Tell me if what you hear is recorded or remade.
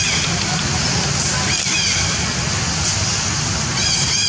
recorded